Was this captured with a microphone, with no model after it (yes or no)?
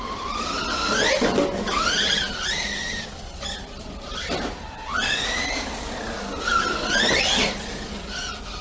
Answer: yes